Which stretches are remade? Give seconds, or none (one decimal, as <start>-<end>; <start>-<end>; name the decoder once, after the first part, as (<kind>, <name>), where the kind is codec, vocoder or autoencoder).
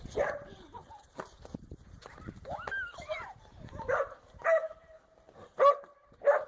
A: 0.0-4.6 (vocoder, BigVGAN v2); 5.4-6.5